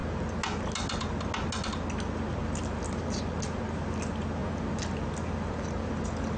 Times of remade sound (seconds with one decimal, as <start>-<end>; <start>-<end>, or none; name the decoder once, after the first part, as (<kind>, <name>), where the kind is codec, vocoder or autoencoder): none